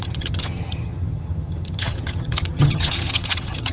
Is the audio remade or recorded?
remade